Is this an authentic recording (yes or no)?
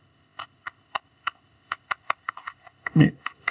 no